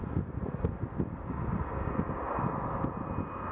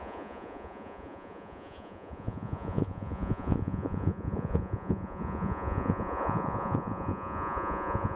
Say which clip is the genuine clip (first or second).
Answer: first